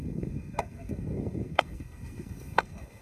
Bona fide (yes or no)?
no